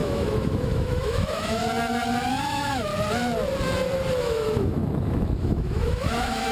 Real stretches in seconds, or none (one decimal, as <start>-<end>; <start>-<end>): 1.6-2.4; 2.9-4.2